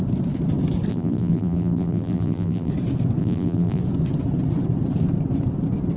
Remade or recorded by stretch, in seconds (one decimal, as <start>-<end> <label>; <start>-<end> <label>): 0.0-0.9 recorded; 0.9-2.7 remade; 2.7-3.2 recorded; 3.2-3.8 remade; 3.8-6.0 recorded